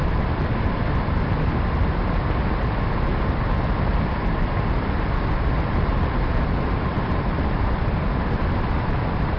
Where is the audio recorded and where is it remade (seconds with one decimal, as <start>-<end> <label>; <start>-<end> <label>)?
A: 0.0-9.4 recorded